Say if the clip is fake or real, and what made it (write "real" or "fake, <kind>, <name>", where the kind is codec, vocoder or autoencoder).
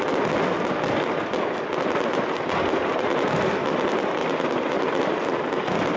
real